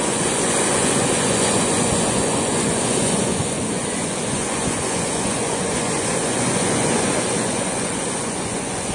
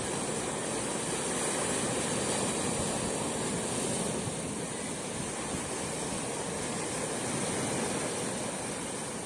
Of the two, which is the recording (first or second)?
second